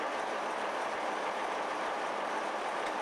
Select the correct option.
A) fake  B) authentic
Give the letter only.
B